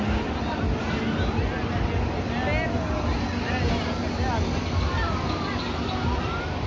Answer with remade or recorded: recorded